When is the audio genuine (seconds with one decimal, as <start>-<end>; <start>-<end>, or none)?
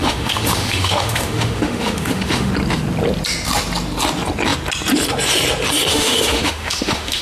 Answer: 2.5-5.9